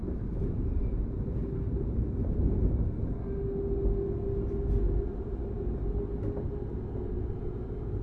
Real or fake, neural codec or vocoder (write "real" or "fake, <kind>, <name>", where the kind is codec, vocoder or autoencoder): real